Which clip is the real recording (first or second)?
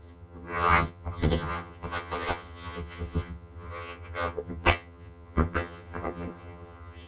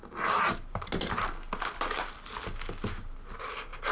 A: second